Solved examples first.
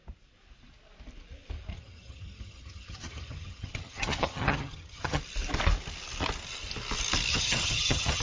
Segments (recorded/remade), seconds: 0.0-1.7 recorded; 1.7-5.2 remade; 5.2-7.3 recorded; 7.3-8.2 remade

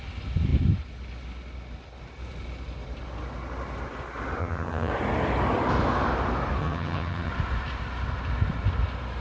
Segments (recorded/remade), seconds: 0.0-4.4 recorded; 4.4-4.9 remade; 4.9-6.6 recorded; 6.6-7.3 remade; 7.3-9.2 recorded